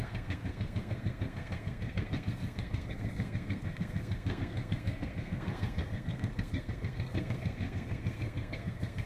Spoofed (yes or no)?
yes